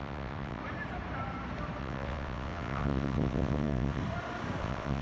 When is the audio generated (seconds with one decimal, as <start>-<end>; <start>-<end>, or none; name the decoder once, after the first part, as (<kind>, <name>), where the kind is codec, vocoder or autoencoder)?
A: 0.0-0.6 (vocoder, WaveNeXt); 1.8-4.0; 4.6-5.0